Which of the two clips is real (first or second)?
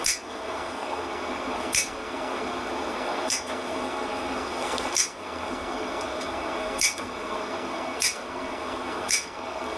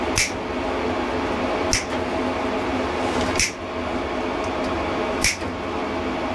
second